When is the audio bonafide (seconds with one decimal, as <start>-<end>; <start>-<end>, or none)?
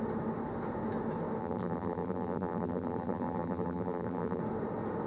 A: 0.0-1.4; 4.4-5.1